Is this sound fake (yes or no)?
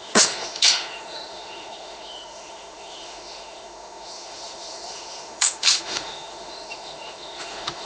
yes